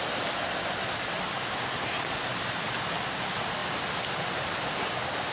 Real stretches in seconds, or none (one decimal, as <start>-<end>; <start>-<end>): 0.0-5.3